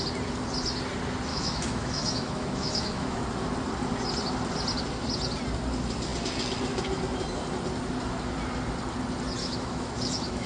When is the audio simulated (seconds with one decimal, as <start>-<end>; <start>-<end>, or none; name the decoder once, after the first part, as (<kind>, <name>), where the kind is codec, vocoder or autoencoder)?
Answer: 1.3-3.2 (autoencoder, DAC-VAE); 9.4-10.5